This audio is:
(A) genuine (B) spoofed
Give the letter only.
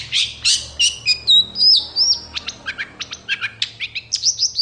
A